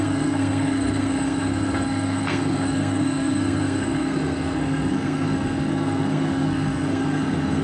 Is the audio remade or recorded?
remade